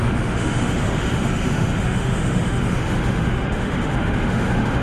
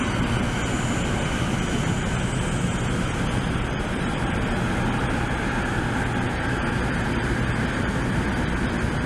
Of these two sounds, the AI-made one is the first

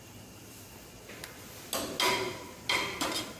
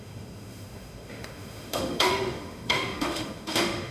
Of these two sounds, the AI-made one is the second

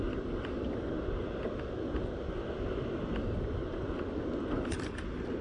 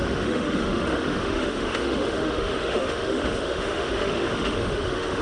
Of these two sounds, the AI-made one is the second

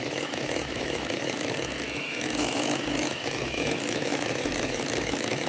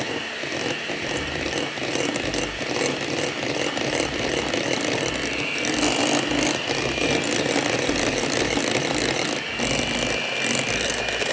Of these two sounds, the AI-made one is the first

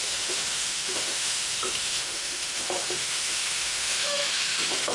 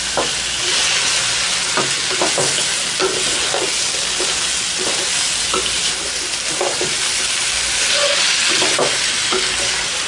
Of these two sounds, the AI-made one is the first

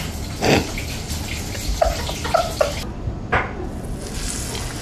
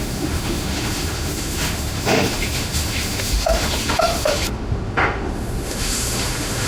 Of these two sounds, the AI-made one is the second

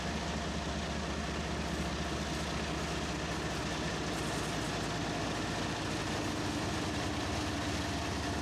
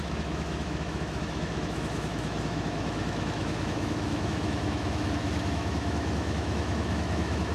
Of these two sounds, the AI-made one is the second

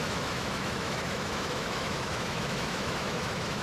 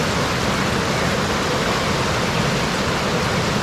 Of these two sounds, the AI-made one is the first